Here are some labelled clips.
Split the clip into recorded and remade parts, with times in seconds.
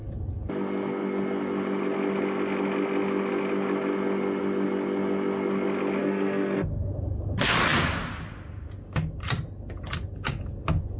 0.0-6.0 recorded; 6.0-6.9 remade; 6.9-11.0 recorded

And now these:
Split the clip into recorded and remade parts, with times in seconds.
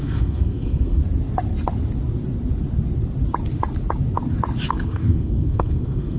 0.0-1.0 remade; 1.0-4.7 recorded; 4.7-6.2 remade